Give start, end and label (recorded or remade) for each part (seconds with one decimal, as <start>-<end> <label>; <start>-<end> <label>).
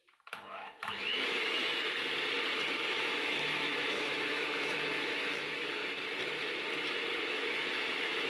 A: 0.0-1.6 remade; 1.6-2.7 recorded; 2.7-5.8 remade; 5.8-7.3 recorded; 7.3-8.3 remade